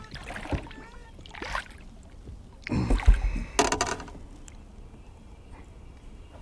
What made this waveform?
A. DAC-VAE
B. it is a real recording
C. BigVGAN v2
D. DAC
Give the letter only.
B